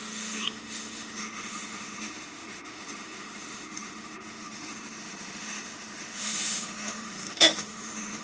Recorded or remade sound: remade